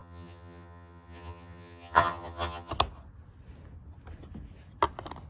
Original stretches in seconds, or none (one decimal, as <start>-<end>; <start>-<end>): 2.7-5.3